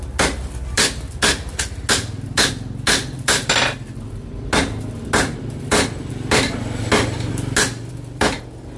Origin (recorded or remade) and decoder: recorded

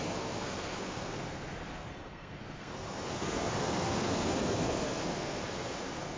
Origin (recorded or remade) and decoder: remade, codec, SNAC